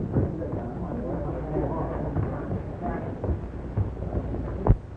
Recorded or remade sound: recorded